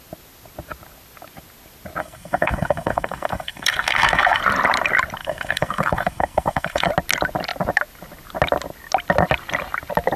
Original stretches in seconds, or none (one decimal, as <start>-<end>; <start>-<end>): 0.0-2.0; 4.4-5.2; 6.9-10.2